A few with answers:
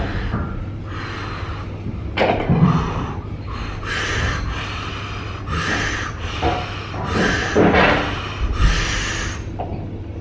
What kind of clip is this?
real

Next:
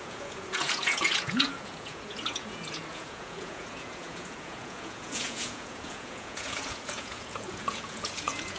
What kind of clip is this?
fake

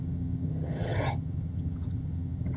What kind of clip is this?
fake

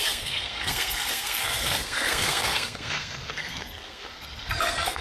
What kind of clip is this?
fake